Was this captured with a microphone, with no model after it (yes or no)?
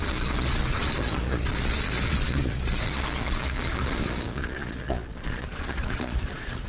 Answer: no